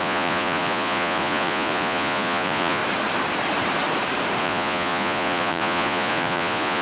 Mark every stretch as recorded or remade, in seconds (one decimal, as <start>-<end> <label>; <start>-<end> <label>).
0.0-2.8 remade; 2.8-4.4 recorded; 4.4-6.8 remade